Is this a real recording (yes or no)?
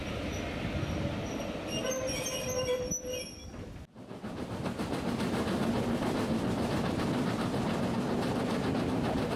yes